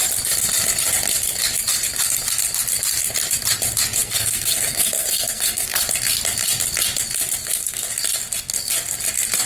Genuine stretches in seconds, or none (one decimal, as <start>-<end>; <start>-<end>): 0.0-4.0; 5.8-7.4; 7.9-9.5